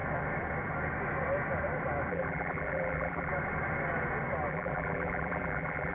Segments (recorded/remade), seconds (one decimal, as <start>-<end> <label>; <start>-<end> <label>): 0.0-2.1 recorded; 2.1-3.3 remade; 3.3-4.5 recorded; 4.5-5.9 remade